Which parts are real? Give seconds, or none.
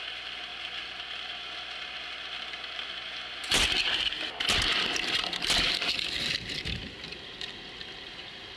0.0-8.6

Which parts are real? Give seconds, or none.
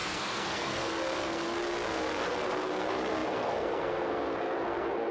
none